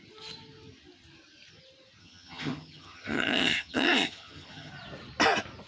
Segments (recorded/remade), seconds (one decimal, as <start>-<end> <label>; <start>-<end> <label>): 0.0-2.0 recorded; 2.0-4.7 remade; 4.7-5.7 recorded